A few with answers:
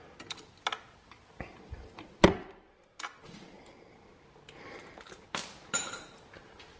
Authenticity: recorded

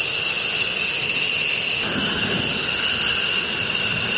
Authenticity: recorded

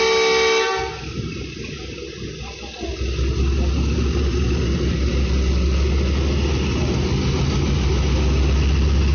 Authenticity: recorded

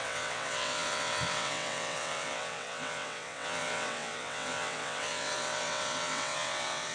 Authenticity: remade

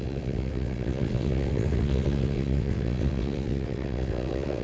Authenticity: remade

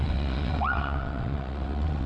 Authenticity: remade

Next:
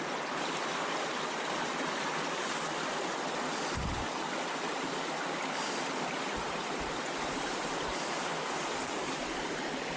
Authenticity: recorded